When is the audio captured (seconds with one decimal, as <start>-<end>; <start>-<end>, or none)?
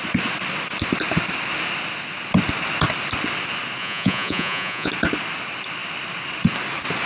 0.0-3.8; 4.9-7.1